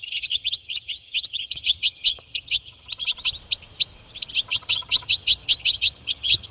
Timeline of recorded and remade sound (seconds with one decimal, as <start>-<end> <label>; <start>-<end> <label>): 0.0-2.9 remade; 2.9-4.5 recorded; 4.5-6.5 remade